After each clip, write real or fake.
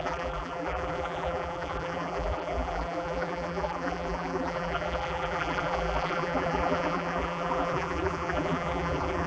fake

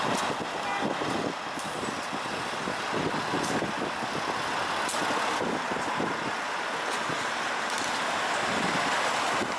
real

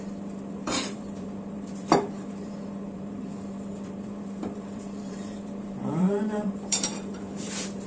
fake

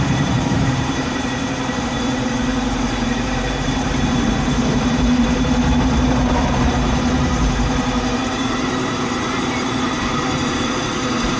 fake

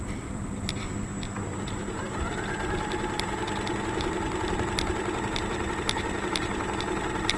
fake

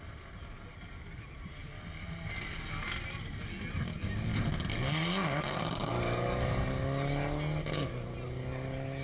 real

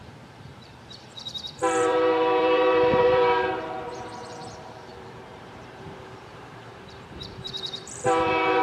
fake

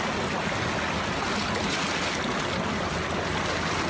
real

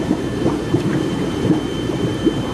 fake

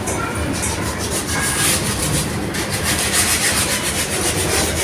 fake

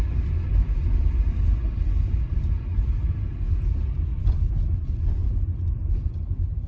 real